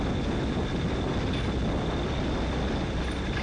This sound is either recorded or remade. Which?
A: recorded